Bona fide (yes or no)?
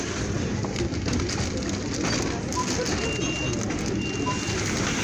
yes